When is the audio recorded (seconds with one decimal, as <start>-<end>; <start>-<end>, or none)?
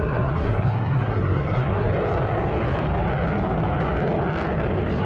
1.9-5.0